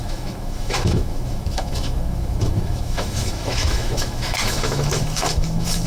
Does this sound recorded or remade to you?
remade